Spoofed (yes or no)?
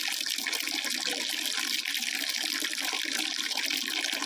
no